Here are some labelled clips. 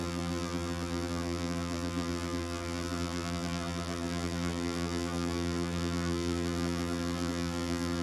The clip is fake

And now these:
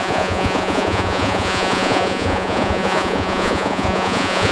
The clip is fake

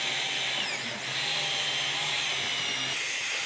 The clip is real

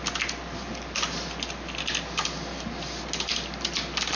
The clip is real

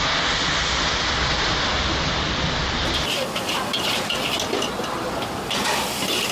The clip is real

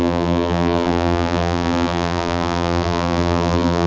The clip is fake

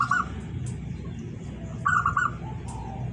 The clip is real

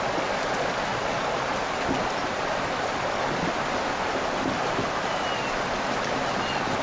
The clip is real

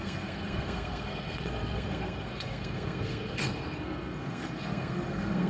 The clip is fake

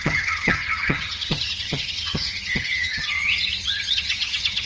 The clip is fake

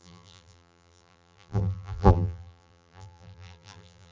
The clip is fake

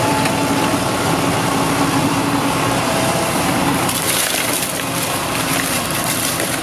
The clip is fake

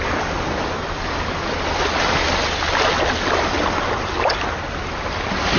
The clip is real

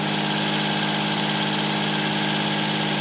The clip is real